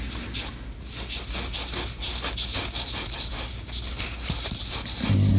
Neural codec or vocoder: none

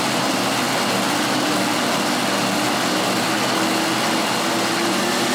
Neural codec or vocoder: none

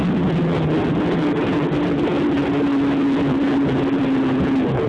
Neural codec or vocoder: none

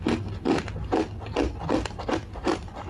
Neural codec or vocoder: none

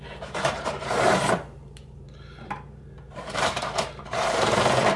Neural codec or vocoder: vocoder, BigVGAN v2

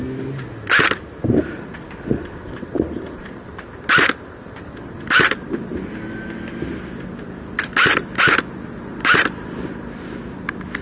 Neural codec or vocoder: none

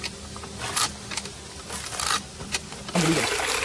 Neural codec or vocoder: none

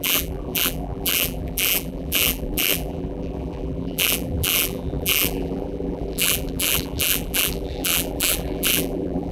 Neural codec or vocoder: vocoder, BigVGAN v2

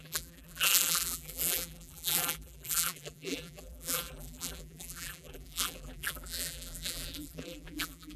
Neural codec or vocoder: vocoder, BigVGAN v2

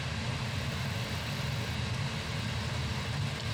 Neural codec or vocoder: none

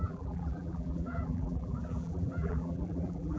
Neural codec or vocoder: vocoder, BigVGAN v2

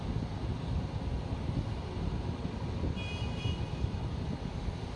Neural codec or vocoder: vocoder, BigVGAN v2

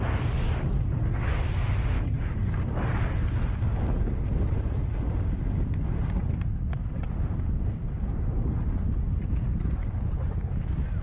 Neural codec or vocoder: none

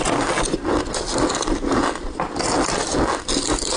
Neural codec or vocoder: none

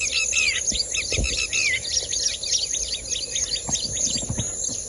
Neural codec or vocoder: none